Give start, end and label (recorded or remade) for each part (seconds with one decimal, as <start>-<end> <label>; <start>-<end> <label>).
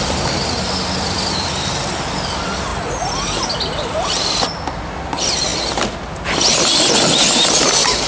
0.0-8.1 recorded